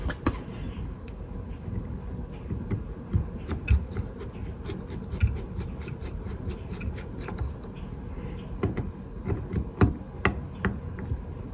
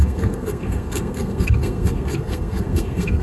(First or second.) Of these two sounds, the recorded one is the first